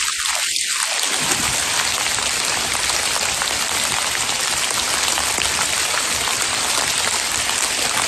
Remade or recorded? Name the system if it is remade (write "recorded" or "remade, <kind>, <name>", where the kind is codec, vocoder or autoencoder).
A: remade, vocoder, BigVGAN v2